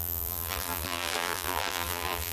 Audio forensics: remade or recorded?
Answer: remade